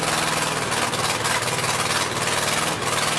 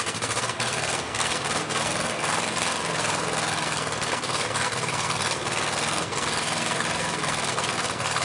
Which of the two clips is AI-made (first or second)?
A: second